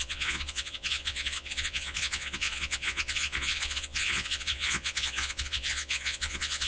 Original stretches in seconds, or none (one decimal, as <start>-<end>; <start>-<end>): none